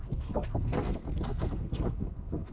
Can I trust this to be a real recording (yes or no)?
no